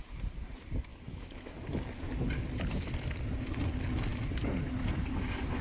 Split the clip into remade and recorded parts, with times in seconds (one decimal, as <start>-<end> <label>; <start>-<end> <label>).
0.0-0.9 recorded; 0.9-1.8 remade; 1.8-5.6 recorded